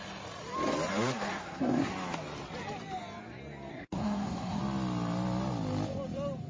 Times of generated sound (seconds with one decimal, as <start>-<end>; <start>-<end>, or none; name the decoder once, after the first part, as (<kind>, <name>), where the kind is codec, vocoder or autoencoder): 1.3-1.9 (codec, SNAC); 3.7-4.6